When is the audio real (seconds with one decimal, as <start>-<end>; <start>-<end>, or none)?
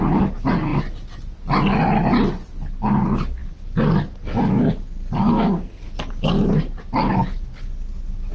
0.0-5.2; 5.8-8.3